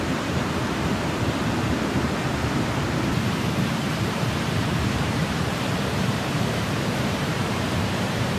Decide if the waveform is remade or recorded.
remade